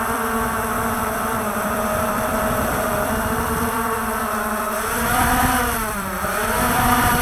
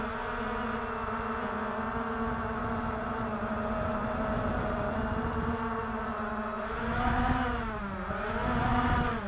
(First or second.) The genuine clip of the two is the second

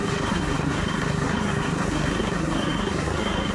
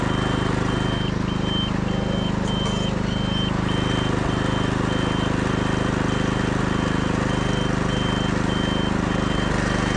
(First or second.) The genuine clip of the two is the second